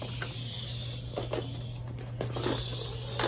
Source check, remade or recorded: recorded